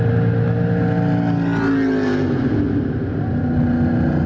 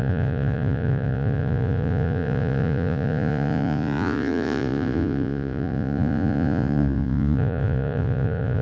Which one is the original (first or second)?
first